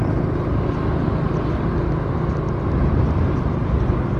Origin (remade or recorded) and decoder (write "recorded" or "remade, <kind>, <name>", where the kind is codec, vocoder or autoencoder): recorded